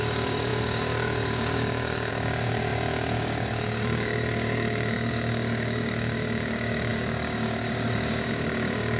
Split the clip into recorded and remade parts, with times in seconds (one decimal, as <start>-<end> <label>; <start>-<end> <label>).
0.0-9.0 remade